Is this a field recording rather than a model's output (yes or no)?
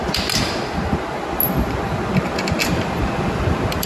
yes